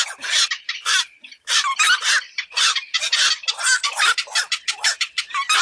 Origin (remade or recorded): recorded